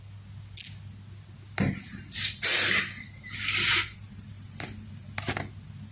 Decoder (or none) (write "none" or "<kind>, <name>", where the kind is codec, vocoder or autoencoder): none